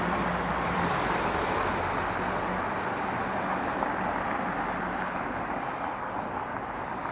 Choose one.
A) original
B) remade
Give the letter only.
A